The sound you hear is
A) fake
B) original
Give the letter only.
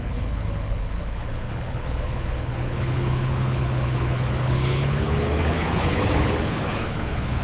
A